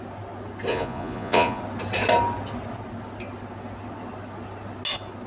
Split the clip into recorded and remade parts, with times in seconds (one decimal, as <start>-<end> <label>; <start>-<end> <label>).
0.0-0.7 recorded; 0.7-1.6 remade; 1.6-5.3 recorded